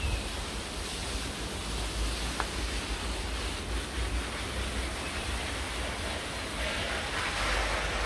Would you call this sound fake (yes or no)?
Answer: no